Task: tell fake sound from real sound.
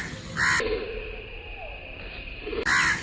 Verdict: real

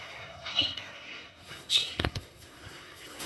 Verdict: fake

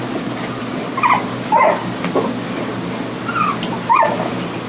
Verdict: real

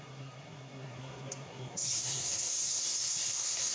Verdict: fake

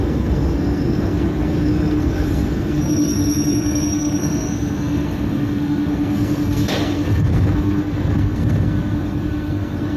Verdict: fake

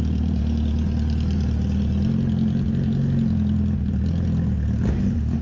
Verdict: real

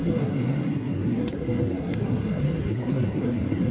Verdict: fake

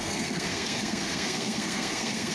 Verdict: fake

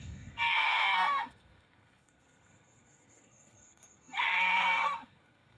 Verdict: fake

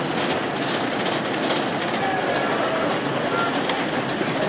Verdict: real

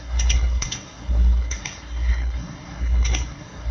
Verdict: fake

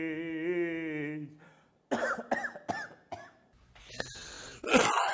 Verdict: real